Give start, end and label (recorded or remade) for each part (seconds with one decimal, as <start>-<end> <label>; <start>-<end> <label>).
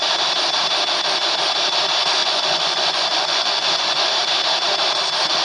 0.0-2.2 recorded; 2.2-4.1 remade; 4.1-5.4 recorded